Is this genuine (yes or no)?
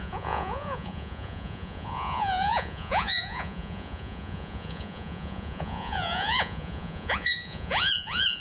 no